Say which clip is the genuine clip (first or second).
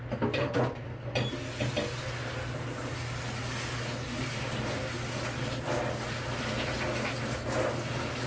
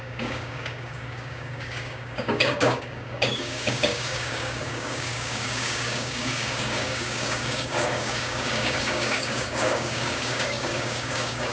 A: first